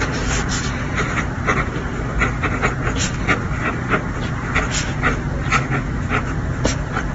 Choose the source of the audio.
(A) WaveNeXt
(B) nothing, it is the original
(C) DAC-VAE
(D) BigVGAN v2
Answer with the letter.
B